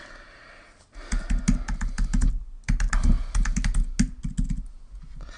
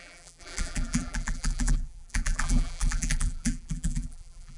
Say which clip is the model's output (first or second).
second